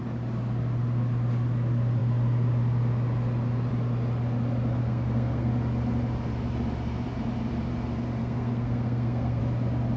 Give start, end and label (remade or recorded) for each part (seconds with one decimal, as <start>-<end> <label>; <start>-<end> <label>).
0.0-4.8 recorded; 4.8-5.5 remade; 5.5-8.2 recorded; 8.2-9.4 remade; 9.4-10.0 recorded